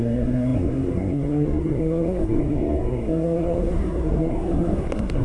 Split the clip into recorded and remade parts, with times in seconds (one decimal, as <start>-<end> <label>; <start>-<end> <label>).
0.0-5.2 remade

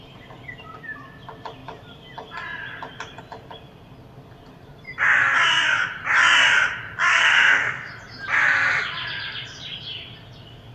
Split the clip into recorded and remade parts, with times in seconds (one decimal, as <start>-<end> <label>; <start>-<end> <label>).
0.0-7.1 recorded; 7.1-7.9 remade; 7.9-10.7 recorded

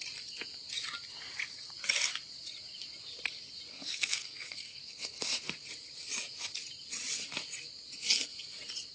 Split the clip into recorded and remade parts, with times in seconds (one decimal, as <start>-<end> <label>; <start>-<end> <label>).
0.0-3.7 recorded; 3.7-5.5 remade; 5.5-8.9 recorded

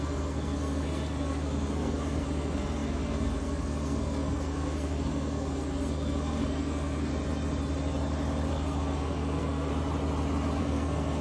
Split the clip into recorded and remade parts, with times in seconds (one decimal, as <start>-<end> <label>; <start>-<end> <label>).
0.0-7.1 remade; 7.1-8.5 recorded; 8.5-9.7 remade; 9.7-10.6 recorded; 10.6-11.2 remade

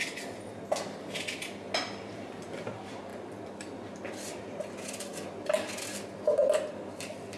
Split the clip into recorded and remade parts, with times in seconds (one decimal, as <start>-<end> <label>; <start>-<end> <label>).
0.0-7.4 recorded

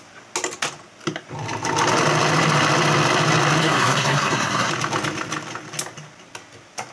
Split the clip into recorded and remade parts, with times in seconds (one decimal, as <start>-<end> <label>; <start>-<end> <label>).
0.0-3.6 recorded; 3.6-4.7 remade; 4.7-6.9 recorded

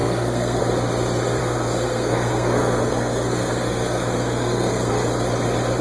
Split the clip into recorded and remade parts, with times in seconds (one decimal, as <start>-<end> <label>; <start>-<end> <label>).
0.0-0.6 remade; 0.6-1.4 recorded; 1.4-4.9 remade; 4.9-5.8 recorded